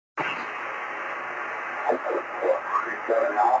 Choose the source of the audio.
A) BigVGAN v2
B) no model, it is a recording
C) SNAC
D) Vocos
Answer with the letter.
B